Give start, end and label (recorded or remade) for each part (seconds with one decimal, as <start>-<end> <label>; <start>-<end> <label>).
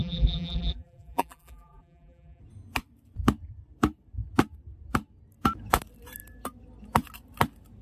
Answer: 0.0-2.4 remade; 2.4-7.8 recorded